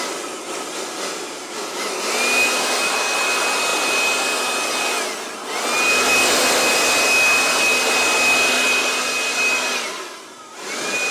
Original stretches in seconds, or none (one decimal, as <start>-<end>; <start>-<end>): 0.0-11.1